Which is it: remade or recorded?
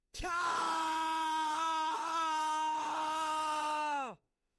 remade